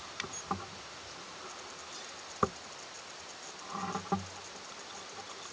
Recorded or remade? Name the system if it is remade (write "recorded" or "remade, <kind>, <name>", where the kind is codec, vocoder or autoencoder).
recorded